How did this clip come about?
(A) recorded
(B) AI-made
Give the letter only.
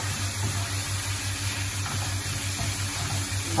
A